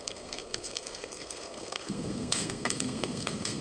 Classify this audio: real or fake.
fake